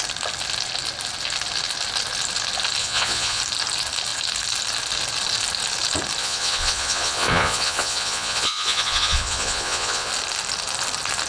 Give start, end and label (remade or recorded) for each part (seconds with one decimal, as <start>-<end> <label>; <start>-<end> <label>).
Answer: 0.0-2.8 recorded; 2.8-3.4 remade; 3.4-6.2 recorded; 6.2-10.1 remade; 10.1-11.3 recorded